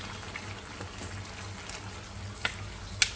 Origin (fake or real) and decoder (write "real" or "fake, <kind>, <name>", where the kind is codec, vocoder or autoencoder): real